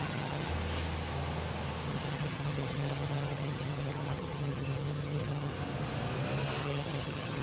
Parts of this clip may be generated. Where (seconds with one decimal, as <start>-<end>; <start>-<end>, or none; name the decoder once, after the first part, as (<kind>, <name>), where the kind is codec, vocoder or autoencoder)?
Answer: 0.0-0.5 (vocoder, HiFi-GAN); 1.9-5.5; 6.6-7.4